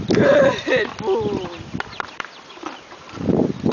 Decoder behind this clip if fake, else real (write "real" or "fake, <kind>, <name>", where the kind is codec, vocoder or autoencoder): fake, vocoder, BigVGAN v2